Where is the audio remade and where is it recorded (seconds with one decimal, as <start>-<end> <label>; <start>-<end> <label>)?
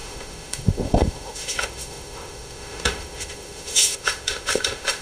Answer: 0.0-5.0 remade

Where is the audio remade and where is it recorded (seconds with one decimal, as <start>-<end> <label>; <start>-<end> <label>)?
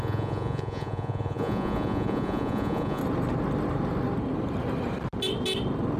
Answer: 0.0-3.0 remade; 3.0-6.0 recorded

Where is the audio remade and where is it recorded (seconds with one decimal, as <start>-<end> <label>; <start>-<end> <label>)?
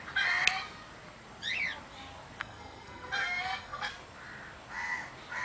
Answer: 0.0-2.4 recorded; 2.4-3.9 remade; 3.9-5.4 recorded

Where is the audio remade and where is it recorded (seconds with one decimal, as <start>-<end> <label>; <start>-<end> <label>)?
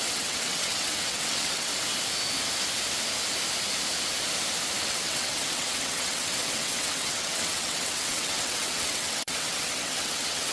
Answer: 0.0-1.7 remade; 1.7-4.8 recorded; 4.8-10.5 remade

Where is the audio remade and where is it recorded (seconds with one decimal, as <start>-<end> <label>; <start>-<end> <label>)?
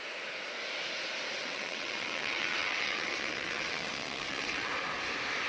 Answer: 0.0-1.4 recorded; 1.4-4.7 remade; 4.7-5.5 recorded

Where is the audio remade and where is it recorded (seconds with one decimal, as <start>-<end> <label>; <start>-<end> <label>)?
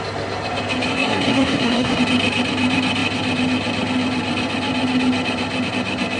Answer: 0.0-0.9 recorded; 0.9-2.0 remade; 2.0-6.2 recorded